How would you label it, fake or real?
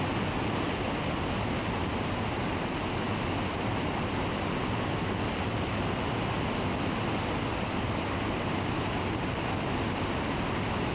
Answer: real